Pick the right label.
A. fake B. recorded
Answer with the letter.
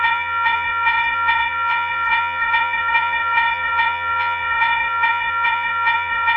A